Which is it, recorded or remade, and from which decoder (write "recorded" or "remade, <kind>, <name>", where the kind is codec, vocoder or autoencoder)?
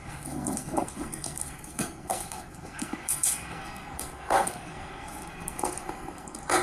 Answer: remade, codec, SNAC